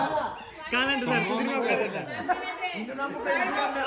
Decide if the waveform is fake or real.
real